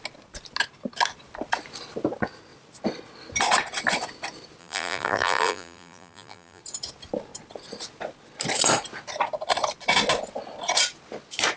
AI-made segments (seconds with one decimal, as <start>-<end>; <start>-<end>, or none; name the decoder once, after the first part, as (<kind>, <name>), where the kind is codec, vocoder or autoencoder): 4.6-6.6 (vocoder, BigVGAN v2)